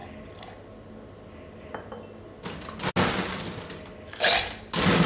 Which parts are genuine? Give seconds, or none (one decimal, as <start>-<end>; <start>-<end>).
0.0-5.1